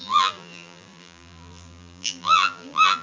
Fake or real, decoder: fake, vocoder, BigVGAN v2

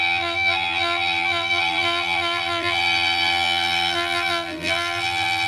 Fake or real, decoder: fake, vocoder, BigVGAN v2